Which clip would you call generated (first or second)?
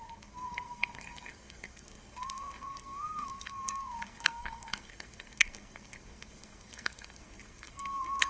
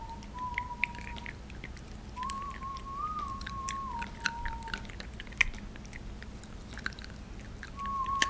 first